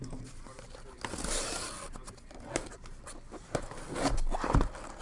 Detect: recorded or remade recorded